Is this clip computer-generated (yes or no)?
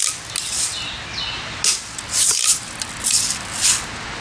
no